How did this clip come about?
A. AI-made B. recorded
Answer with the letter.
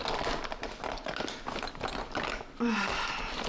B